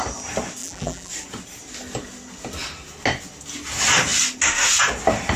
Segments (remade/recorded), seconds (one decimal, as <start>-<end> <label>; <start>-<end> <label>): 0.0-0.6 recorded; 0.6-1.1 remade; 1.1-5.4 recorded